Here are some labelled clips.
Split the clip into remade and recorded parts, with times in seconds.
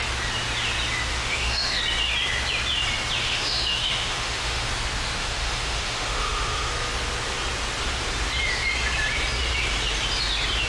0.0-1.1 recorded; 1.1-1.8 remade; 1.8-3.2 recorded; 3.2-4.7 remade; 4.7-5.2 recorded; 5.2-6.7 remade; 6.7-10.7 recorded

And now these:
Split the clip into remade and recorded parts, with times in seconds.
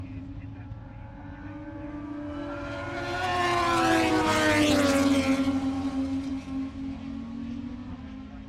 0.0-8.5 recorded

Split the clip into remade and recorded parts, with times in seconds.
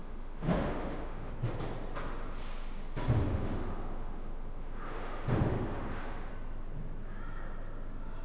0.0-1.3 remade; 1.3-3.3 recorded; 3.3-6.3 remade; 6.3-8.2 recorded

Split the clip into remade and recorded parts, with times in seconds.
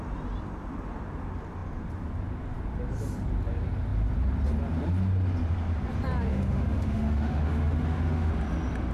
0.0-6.3 recorded; 6.3-8.3 remade; 8.3-8.9 recorded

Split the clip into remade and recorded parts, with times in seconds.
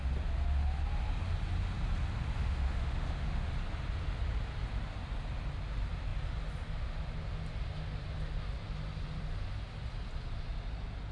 0.0-2.4 recorded; 2.4-3.5 remade; 3.5-11.1 recorded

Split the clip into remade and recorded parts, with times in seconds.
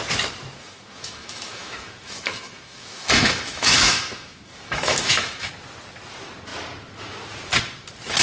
0.0-0.6 recorded; 0.6-5.5 remade; 5.5-8.2 recorded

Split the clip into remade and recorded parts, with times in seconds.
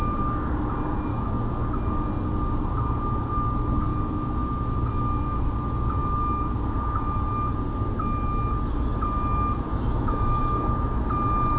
0.0-1.1 recorded; 1.1-1.7 remade; 1.7-9.7 recorded; 9.7-10.4 remade; 10.4-11.6 recorded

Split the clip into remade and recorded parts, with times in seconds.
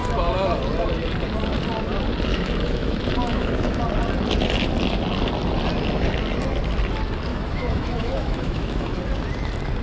0.0-2.3 recorded; 2.3-3.8 remade; 3.8-7.3 recorded; 7.3-9.0 remade; 9.0-9.8 recorded